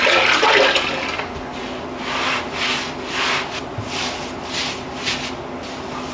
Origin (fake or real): real